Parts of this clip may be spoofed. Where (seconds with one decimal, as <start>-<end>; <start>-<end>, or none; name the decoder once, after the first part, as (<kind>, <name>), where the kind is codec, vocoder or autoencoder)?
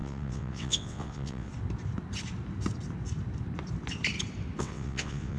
0.0-1.5 (vocoder, WaveNeXt); 4.6-5.4